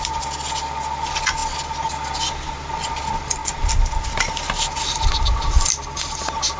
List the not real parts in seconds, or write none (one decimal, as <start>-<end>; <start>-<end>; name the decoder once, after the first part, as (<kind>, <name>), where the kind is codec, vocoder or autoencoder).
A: none